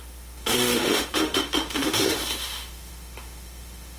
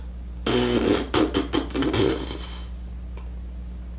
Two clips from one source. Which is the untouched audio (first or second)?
second